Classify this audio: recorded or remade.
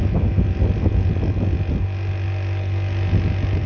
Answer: recorded